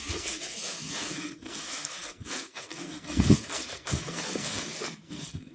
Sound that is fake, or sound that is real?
fake